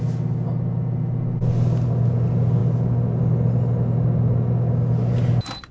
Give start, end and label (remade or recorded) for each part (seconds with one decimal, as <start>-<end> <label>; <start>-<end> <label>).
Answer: 0.0-5.7 recorded